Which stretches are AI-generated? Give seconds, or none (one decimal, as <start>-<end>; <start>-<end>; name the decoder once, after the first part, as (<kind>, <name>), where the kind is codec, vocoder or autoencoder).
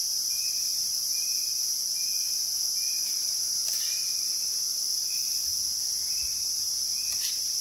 0.0-1.3 (vocoder, BigVGAN v2); 3.1-4.1; 5.1-5.5; 6.1-7.6